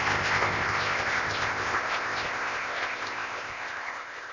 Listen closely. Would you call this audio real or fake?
fake